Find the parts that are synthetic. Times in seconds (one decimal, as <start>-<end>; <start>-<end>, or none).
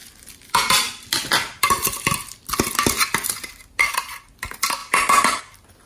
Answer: 0.0-3.5; 4.8-5.4